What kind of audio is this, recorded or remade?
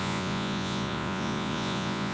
remade